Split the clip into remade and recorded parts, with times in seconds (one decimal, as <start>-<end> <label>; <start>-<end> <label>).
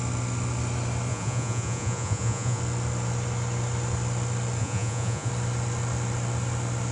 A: 0.0-1.1 recorded; 1.1-2.6 remade; 2.6-4.6 recorded; 4.6-5.3 remade; 5.3-6.9 recorded